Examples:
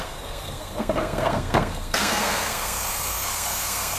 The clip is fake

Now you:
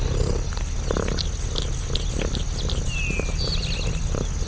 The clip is real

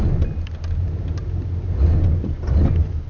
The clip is real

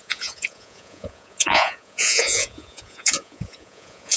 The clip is fake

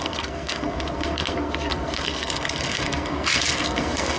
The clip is fake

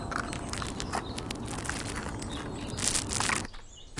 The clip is real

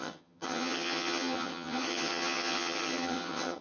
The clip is fake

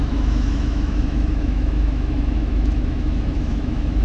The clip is fake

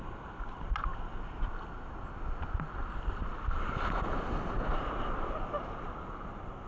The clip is real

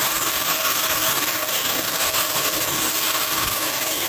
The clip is fake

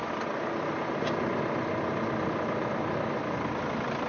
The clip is real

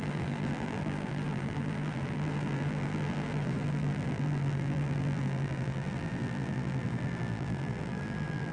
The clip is fake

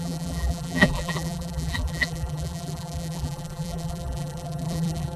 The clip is fake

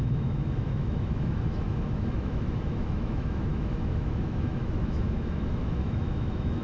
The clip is fake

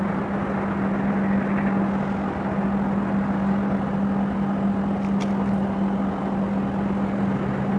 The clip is real